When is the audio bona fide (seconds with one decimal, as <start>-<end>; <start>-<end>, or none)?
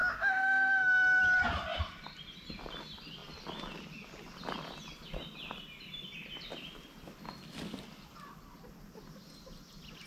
1.2-10.1